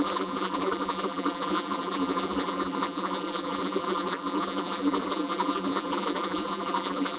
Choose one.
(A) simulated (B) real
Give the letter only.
A